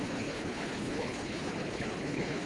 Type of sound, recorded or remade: remade